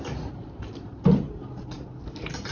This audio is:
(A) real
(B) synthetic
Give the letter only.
A